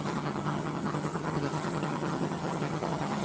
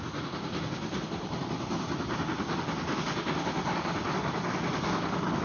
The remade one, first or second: first